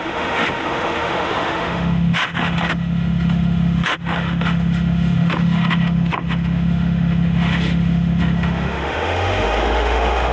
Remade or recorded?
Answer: remade